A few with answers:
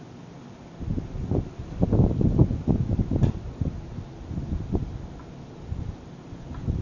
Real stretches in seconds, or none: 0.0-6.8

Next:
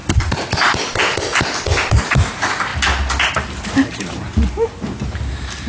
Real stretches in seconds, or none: 0.0-2.0; 2.7-3.3

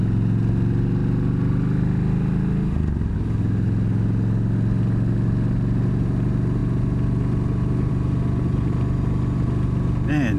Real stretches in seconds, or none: 0.0-10.4

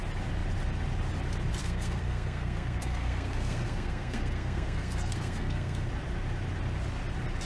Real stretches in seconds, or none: 0.0-1.6; 5.9-7.4

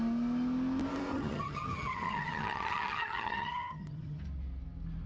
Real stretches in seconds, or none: 0.0-1.1; 4.2-5.1

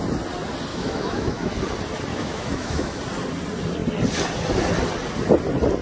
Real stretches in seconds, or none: 0.0-0.7; 1.5-2.1; 3.0-5.8

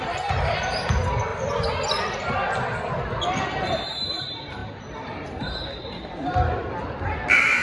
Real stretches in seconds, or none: 1.3-3.8

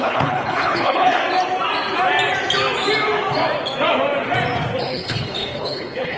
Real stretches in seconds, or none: 1.2-4.8